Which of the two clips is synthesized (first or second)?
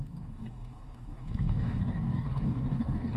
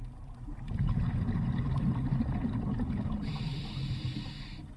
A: first